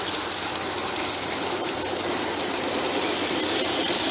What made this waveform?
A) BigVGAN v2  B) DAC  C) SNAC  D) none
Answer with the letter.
D